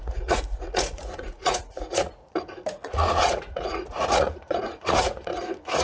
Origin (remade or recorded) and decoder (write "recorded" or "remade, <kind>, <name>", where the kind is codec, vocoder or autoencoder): remade, vocoder, Vocos